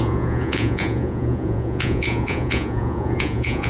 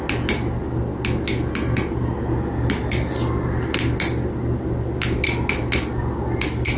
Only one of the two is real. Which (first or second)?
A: second